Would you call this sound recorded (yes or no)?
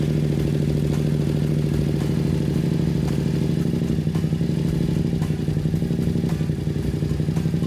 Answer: yes